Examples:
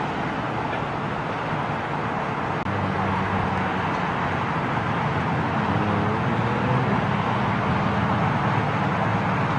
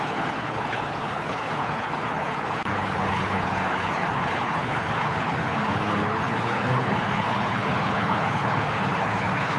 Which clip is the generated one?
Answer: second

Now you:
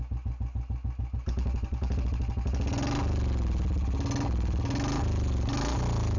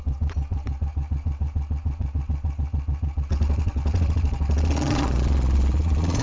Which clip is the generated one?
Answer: second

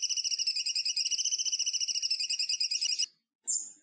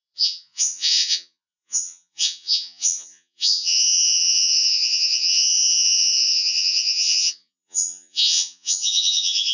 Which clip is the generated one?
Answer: second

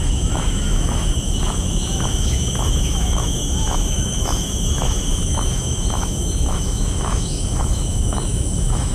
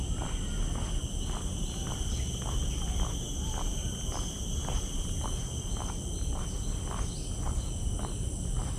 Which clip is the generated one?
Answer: first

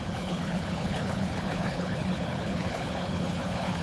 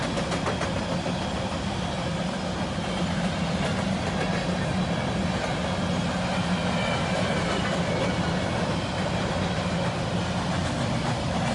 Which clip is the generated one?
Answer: first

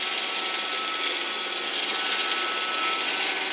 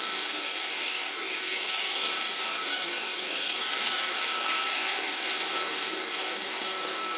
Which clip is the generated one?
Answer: second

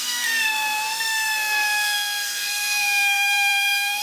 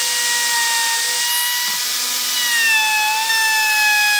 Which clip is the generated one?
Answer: first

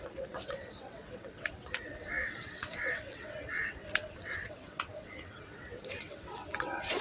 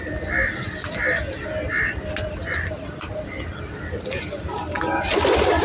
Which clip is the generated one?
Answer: first